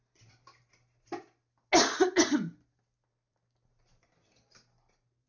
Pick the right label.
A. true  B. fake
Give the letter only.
A